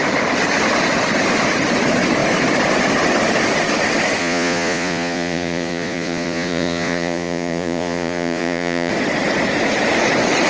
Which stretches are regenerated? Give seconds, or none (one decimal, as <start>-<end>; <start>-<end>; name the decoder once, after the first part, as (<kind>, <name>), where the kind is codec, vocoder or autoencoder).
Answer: 4.2-8.9 (vocoder, Vocos)